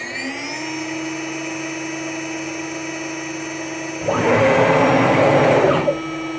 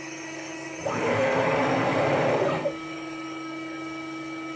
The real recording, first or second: first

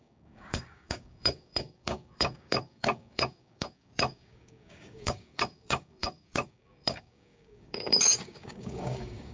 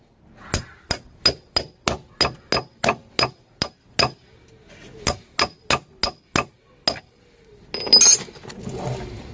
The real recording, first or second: second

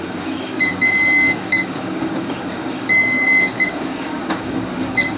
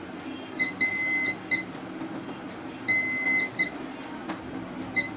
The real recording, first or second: second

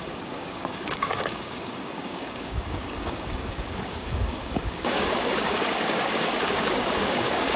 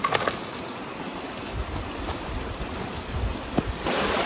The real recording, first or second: second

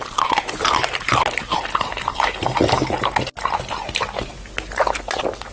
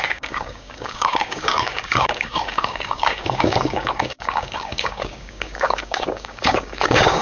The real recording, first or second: first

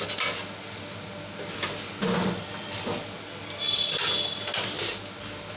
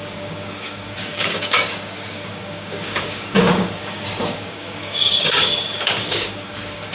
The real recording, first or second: first